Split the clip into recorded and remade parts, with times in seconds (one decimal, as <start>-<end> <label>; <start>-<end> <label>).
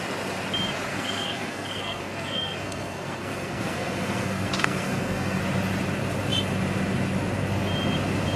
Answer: 0.0-0.9 recorded; 0.9-5.4 remade; 5.4-8.4 recorded